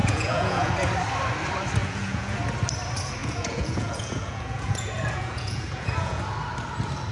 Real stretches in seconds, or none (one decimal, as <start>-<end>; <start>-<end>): 0.7-1.8; 2.4-3.2; 6.2-7.1